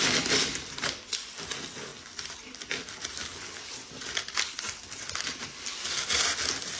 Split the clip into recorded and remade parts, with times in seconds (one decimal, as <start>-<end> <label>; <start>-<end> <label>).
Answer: 0.0-6.8 recorded

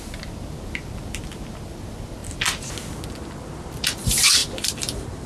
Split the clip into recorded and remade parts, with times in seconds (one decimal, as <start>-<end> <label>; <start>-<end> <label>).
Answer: 0.0-5.3 recorded

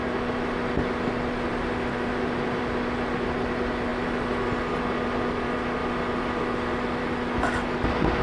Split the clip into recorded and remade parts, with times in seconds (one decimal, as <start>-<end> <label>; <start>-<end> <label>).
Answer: 0.0-8.2 recorded

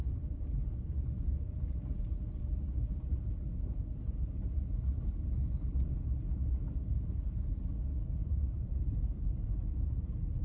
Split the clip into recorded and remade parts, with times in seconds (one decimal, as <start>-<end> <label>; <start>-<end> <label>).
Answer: 0.0-5.4 remade; 5.4-8.2 recorded; 8.2-10.4 remade